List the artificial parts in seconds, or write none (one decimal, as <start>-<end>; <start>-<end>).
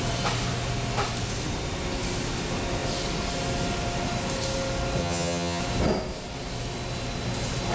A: 5.0-5.6